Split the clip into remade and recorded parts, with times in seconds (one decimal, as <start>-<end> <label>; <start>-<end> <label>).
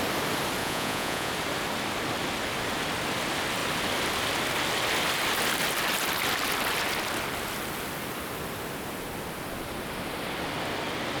0.0-0.6 recorded; 0.6-1.3 remade; 1.3-11.2 recorded